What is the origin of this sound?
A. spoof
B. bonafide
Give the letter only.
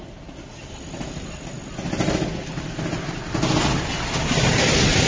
B